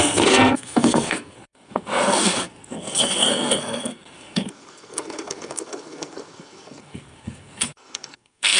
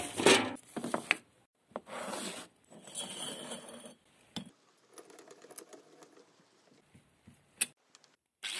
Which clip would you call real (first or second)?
second